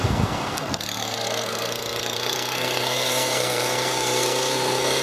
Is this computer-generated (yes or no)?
yes